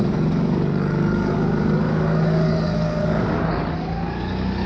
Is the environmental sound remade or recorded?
remade